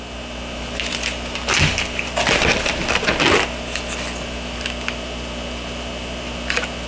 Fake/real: real